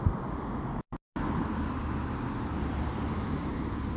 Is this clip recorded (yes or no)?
yes